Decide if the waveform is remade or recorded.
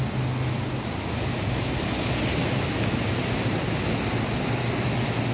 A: recorded